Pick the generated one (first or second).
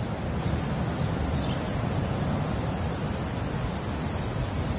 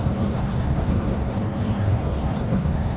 second